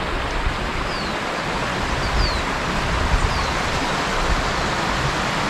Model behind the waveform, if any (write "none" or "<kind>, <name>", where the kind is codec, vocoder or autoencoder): none